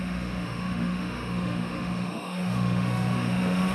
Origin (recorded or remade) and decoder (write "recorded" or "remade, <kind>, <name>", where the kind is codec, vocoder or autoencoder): remade, autoencoder, DAC-VAE